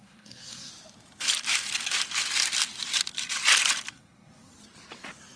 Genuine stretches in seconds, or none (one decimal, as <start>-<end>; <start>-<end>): 0.7-3.9; 4.5-5.4